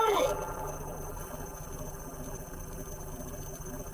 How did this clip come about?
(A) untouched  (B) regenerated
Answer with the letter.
B